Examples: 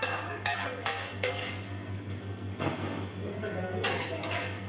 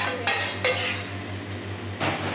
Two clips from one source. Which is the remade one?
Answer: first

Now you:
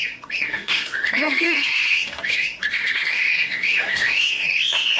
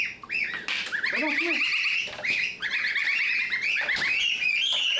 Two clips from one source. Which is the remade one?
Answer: first